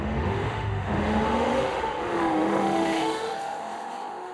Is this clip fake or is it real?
fake